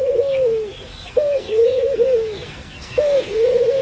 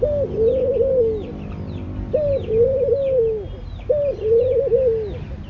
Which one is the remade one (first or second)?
first